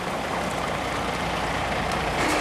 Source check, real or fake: real